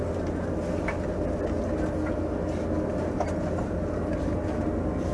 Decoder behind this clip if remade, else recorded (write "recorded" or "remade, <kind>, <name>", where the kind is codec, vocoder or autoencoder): recorded